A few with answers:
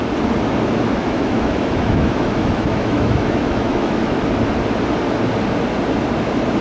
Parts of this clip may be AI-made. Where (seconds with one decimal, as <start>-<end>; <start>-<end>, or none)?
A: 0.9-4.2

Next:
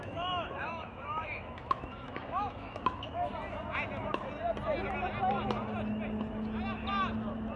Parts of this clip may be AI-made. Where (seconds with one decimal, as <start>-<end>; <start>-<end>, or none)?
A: 0.0-3.3

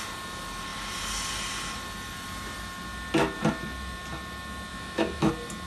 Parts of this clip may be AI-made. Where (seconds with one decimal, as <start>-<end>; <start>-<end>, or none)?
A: 4.7-5.3